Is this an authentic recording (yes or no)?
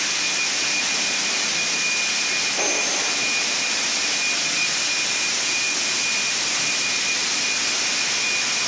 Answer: yes